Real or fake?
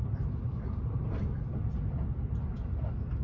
real